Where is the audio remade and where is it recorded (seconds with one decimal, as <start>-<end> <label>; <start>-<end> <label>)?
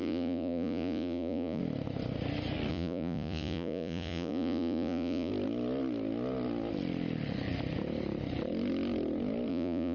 0.0-1.6 remade; 1.6-2.7 recorded; 2.7-5.3 remade; 5.3-9.5 recorded; 9.5-9.9 remade